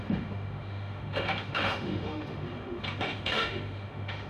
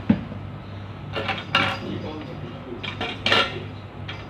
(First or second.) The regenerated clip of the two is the first